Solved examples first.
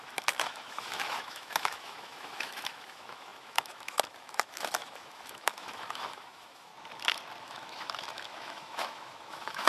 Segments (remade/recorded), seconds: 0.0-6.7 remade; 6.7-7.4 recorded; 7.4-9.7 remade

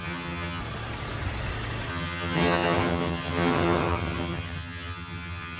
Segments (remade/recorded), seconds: 0.0-0.6 remade; 0.6-1.9 recorded; 1.9-5.6 remade

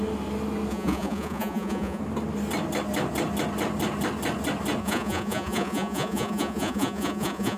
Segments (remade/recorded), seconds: 0.0-0.7 recorded; 0.7-2.0 remade; 2.0-4.8 recorded; 4.8-7.6 remade